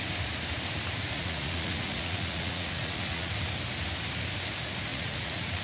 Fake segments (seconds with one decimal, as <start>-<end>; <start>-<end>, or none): 1.1-3.3; 4.9-5.6